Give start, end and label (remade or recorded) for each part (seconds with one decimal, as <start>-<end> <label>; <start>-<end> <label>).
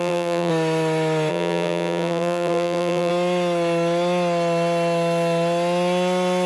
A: 0.0-0.5 remade; 0.5-1.3 recorded; 1.3-3.1 remade; 3.1-6.5 recorded